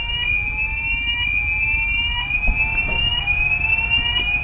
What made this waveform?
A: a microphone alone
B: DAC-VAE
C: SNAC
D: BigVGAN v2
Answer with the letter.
A